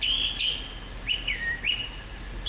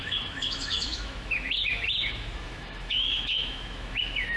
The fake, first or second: second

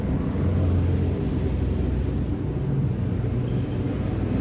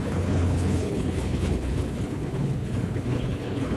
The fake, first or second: second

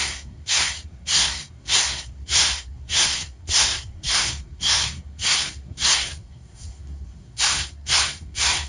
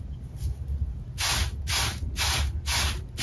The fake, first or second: first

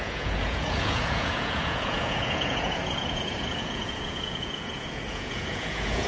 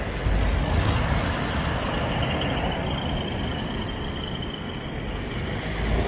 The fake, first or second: first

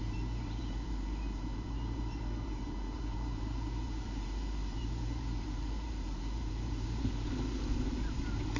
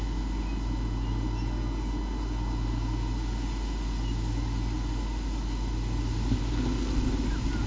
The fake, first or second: first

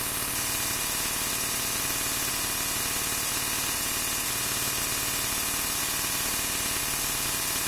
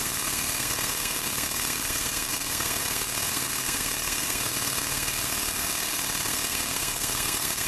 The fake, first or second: second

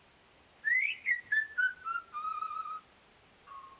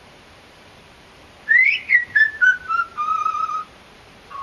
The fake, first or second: second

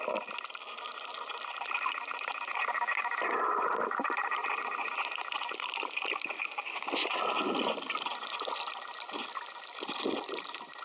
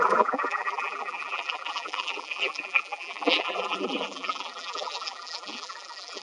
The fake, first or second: second